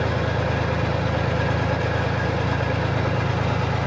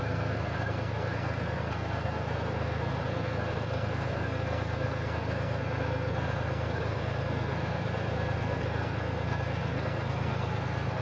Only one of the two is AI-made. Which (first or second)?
second